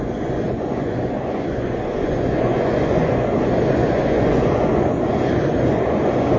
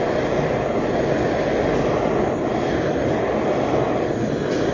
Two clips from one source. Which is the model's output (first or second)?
first